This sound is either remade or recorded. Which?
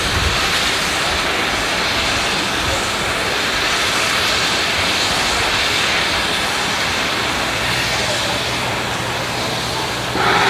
recorded